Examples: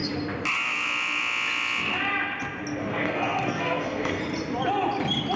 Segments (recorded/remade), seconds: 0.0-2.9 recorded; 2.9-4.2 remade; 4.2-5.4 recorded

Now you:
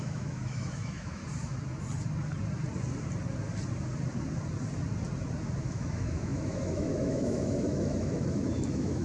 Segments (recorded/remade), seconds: 0.0-1.2 remade; 1.2-5.6 recorded; 5.6-9.0 remade

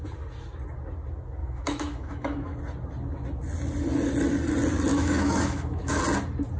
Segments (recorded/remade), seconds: 0.0-1.4 recorded; 1.4-2.6 remade; 2.6-4.9 recorded; 4.9-6.0 remade; 6.0-6.6 recorded

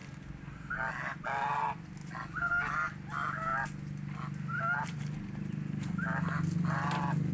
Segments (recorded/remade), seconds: 0.0-7.3 recorded

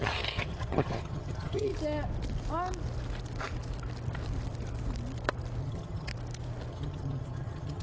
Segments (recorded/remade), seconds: 0.0-1.7 remade; 1.7-5.6 recorded; 5.6-6.1 remade; 6.1-6.7 recorded; 6.7-7.8 remade

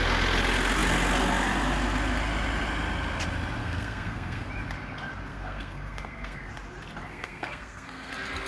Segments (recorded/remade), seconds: 0.0-3.6 recorded; 3.6-4.5 remade; 4.5-5.3 recorded; 5.3-6.5 remade; 6.5-7.1 recorded; 7.1-8.1 remade; 8.1-8.5 recorded

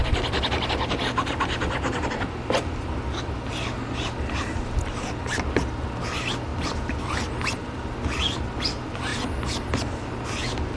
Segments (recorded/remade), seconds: 0.0-10.8 recorded